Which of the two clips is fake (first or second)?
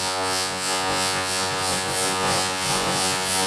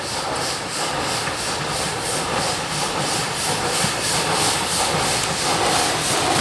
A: first